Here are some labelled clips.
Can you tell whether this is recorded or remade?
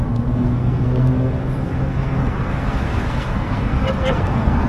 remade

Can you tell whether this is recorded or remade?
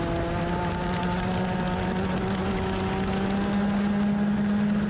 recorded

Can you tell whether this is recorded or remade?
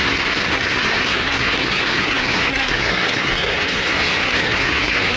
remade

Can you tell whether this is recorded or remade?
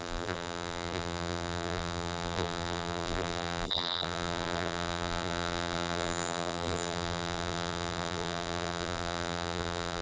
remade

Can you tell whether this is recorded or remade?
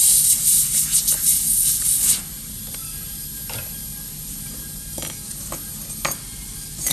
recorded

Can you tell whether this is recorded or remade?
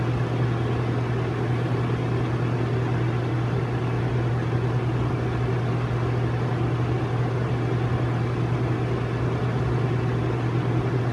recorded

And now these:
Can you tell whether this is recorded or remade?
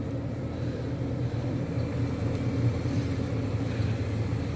recorded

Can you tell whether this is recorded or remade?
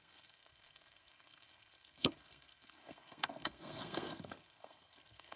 remade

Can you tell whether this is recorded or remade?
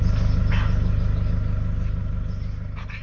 recorded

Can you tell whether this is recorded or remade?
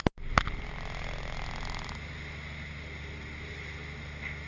recorded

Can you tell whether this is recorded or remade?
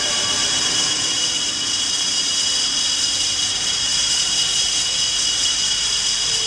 remade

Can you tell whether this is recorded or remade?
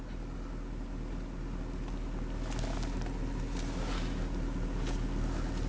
recorded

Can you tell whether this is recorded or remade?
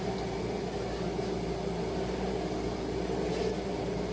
recorded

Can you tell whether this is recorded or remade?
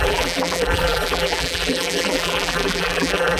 remade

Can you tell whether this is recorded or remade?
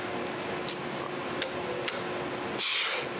recorded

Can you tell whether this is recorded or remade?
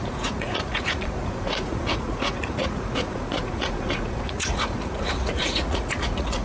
remade